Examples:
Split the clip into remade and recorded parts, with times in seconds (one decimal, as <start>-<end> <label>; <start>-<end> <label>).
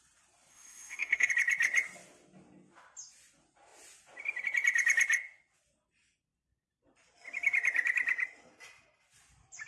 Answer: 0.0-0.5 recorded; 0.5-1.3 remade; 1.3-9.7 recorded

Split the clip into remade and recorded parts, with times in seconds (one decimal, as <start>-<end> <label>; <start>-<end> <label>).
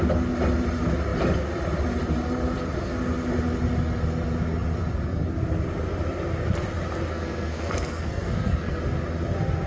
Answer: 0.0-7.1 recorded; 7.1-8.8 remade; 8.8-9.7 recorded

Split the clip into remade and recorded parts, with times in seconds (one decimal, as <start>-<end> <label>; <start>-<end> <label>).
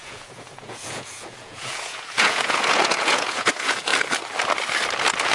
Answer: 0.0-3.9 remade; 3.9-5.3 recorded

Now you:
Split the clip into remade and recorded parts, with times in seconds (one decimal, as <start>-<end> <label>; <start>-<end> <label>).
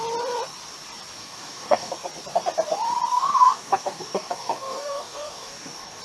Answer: 0.0-1.2 recorded; 1.2-1.9 remade; 1.9-3.1 recorded; 3.1-6.0 remade